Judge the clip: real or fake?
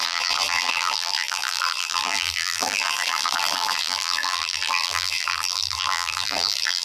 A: fake